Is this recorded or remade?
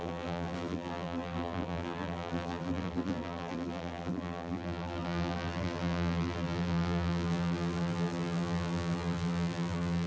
remade